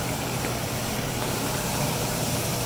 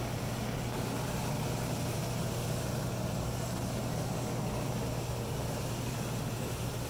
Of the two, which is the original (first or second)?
second